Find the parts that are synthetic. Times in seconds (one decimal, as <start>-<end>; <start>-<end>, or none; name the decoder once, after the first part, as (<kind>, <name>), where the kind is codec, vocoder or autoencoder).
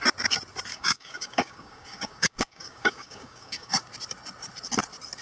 0.7-3.8 (codec, DAC)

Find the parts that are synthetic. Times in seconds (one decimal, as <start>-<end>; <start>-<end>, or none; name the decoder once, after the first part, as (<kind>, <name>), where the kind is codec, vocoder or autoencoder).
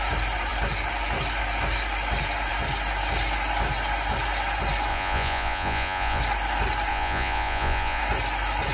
4.9-6.2 (vocoder, Vocos); 6.9-8.0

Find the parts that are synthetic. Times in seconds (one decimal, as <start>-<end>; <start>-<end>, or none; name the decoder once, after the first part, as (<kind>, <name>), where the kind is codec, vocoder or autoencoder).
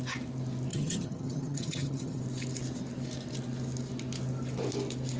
0.7-2.2 (vocoder, HiFi-GAN)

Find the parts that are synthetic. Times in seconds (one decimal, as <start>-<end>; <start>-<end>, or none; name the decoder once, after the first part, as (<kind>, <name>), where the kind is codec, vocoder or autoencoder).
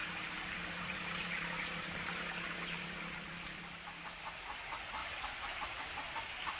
0.0-3.6 (vocoder, BigVGAN v2); 5.0-5.8